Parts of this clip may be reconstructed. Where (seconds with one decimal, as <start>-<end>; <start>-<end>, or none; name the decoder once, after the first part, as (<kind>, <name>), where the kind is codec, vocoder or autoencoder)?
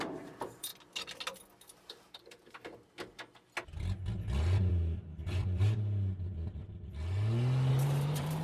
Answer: 0.0-0.7 (vocoder, BigVGAN v2); 1.7-2.7; 4.7-6.6; 7.7-8.4